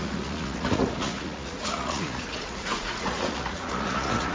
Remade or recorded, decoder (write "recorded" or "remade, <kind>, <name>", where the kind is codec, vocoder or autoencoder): remade, vocoder, Vocos